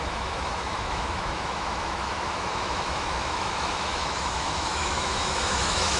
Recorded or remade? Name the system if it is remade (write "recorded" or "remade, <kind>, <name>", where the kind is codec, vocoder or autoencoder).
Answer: remade, autoencoder, DAC-VAE